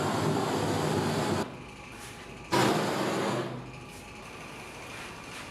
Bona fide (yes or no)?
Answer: yes